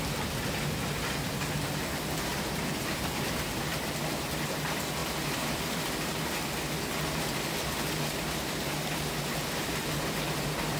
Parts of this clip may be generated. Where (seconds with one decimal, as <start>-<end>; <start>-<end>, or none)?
2.3-3.2; 5.0-5.8

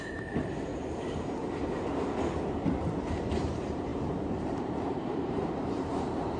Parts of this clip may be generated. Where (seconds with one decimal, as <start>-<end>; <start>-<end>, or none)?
0.0-0.7; 3.0-6.4